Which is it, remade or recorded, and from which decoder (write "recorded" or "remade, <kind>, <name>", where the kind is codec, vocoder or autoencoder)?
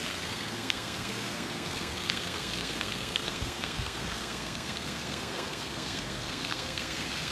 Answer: remade, codec, SNAC